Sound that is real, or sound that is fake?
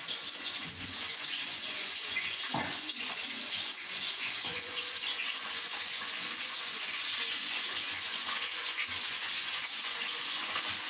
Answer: fake